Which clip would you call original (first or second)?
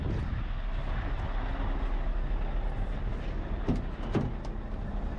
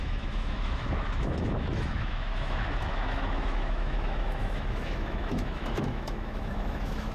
first